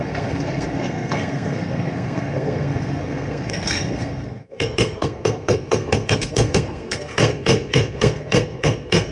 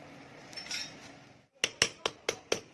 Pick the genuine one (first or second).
second